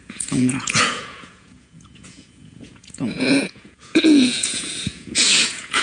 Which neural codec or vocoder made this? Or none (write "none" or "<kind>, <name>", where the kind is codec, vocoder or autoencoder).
vocoder, Vocos